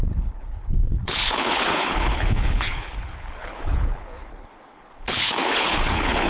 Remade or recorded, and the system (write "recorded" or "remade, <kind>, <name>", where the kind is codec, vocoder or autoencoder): remade, codec, HILCodec